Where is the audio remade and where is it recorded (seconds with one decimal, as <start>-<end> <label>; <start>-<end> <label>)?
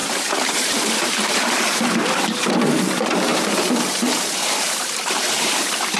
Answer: 0.0-2.5 remade; 2.5-3.3 recorded; 3.3-6.0 remade